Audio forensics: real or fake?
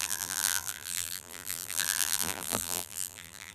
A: fake